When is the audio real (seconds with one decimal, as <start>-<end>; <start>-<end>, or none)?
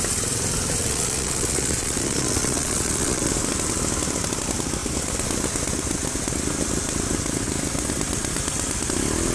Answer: 0.0-0.8; 3.3-9.3